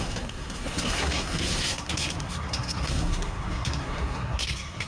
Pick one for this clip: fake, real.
fake